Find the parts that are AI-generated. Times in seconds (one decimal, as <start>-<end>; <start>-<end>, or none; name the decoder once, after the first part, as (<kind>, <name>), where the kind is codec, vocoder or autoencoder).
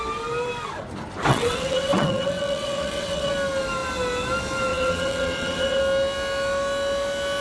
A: 1.3-3.3 (vocoder, WaveNeXt); 4.7-5.8